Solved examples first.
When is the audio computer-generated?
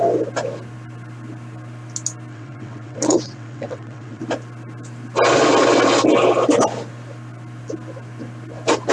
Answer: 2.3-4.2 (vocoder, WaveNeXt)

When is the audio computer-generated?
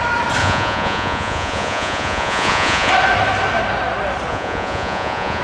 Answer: 0.4-2.9 (vocoder, Vocos); 4.3-5.4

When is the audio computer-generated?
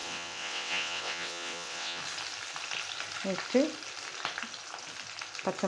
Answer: 0.0-2.0 (vocoder, WaveNeXt)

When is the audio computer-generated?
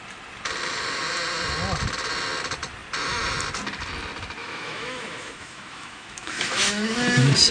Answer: 4.4-6.9 (autoencoder, DAC-VAE)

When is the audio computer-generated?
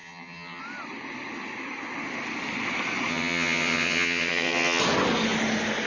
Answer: 0.0-0.6 (vocoder, HiFi-GAN); 3.1-4.8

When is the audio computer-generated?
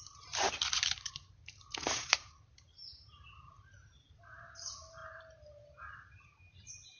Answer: 0.0-5.0 (vocoder, BigVGAN v2); 6.5-7.0